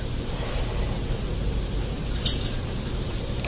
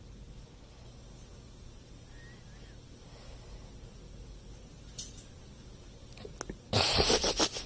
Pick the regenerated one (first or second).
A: first